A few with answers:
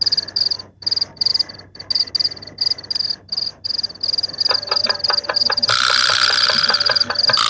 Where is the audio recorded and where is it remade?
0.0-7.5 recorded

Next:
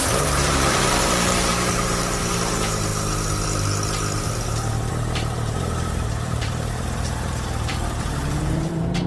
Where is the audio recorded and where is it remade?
0.0-2.9 remade; 2.9-4.9 recorded; 4.9-9.1 remade

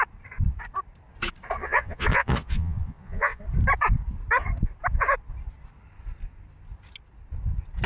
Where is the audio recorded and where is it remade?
0.0-1.6 recorded; 1.6-3.4 remade; 3.4-7.9 recorded

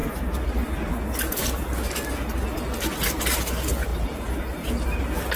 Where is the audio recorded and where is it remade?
0.0-5.4 recorded